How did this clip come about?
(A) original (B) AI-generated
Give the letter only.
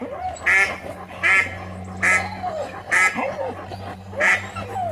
A